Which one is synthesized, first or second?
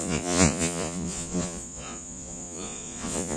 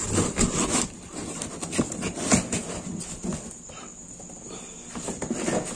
first